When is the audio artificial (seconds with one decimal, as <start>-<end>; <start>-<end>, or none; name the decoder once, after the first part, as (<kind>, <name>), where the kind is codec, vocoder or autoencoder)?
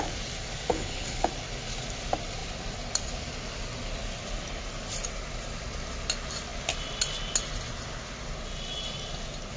0.7-1.3 (codec, HILCodec)